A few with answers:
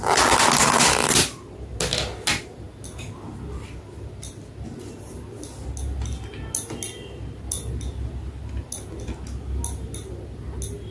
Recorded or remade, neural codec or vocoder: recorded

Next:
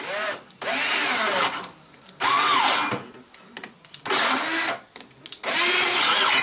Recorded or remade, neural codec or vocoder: recorded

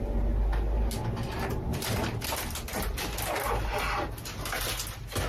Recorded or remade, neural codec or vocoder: recorded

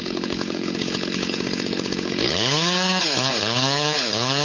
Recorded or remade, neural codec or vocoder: remade, codec, HILCodec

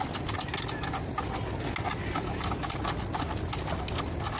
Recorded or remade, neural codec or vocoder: recorded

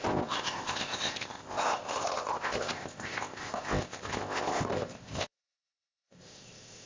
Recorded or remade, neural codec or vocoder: remade, codec, ZipCodec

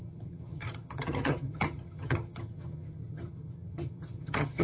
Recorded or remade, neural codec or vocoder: remade, vocoder, HiFi-GAN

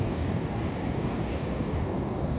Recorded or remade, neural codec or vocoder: remade, codec, DAC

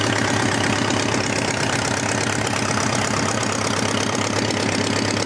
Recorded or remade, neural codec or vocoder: recorded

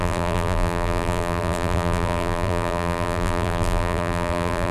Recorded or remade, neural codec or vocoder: remade, vocoder, BigVGAN v2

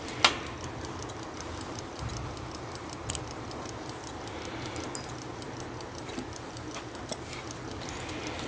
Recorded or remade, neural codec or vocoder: recorded